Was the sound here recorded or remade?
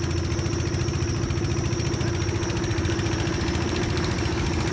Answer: recorded